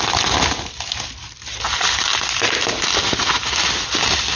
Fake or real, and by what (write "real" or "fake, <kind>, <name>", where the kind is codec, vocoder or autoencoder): real